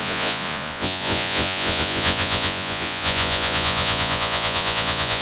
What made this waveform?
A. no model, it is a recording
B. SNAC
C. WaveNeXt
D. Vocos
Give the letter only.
D